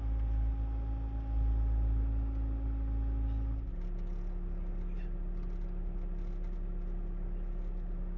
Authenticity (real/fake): real